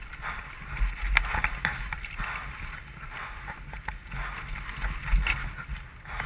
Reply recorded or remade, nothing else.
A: recorded